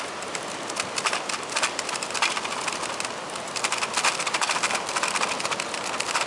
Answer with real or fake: real